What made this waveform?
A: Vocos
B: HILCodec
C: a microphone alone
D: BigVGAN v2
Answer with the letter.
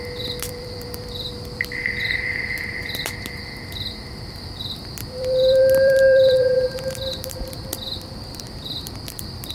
D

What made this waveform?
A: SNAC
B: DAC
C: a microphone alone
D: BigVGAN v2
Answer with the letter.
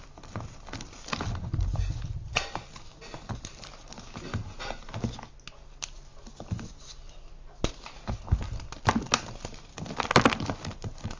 C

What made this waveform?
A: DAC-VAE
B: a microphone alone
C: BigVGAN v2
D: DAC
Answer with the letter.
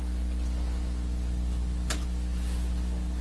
B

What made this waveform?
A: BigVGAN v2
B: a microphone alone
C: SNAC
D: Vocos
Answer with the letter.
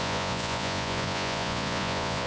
D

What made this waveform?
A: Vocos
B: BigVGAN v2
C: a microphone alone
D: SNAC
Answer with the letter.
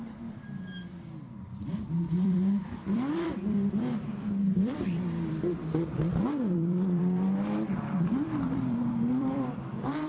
B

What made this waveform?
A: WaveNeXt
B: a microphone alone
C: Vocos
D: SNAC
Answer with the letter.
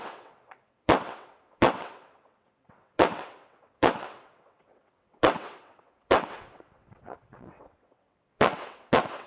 A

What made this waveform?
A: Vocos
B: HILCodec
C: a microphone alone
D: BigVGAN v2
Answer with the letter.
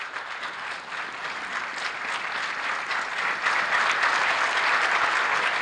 C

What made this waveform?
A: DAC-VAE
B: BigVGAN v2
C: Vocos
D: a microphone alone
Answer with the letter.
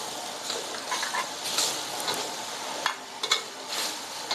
D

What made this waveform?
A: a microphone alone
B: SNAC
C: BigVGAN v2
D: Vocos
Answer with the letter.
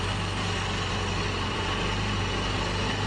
A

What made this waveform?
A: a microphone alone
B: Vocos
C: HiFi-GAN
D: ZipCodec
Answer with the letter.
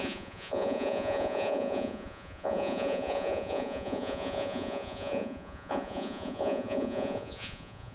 B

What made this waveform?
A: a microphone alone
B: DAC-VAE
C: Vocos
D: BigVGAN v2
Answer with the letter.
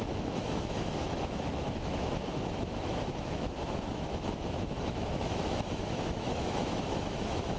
B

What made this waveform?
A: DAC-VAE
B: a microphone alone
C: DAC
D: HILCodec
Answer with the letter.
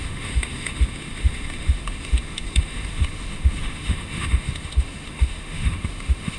A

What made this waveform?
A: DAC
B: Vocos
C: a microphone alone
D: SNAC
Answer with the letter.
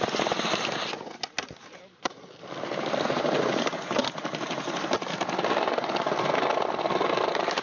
C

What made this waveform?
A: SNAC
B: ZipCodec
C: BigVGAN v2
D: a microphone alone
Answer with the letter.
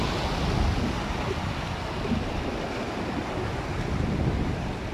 D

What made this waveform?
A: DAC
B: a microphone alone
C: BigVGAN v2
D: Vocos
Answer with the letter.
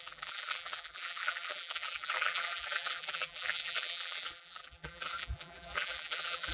C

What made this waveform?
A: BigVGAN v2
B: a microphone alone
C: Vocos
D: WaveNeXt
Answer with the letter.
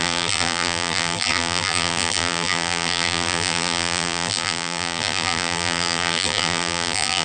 A